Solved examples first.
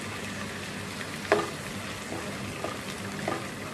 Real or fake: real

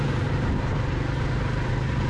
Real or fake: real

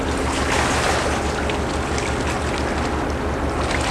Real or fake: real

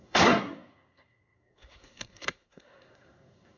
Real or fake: fake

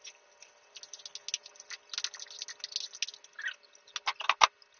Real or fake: real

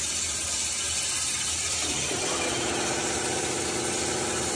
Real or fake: real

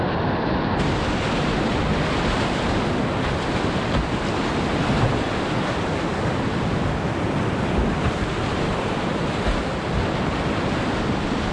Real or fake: real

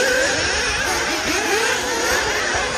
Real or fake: real